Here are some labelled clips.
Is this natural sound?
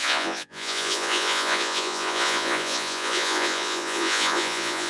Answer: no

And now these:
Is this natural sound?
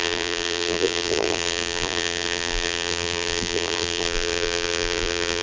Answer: no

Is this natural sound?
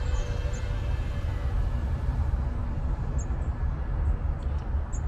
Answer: yes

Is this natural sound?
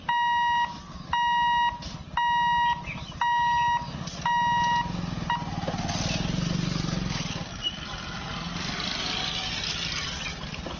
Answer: yes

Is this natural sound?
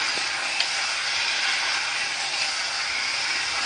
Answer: yes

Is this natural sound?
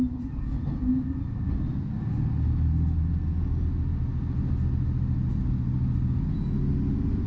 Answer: yes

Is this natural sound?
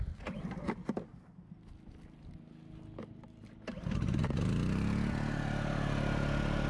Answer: yes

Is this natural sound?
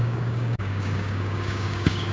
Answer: no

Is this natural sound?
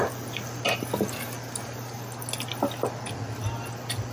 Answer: yes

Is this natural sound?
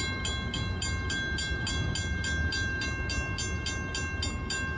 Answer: yes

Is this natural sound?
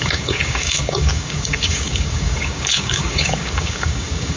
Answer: no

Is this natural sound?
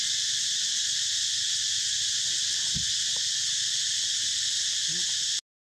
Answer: yes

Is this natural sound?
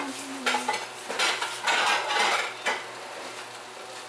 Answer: yes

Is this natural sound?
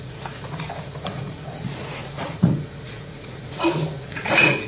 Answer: no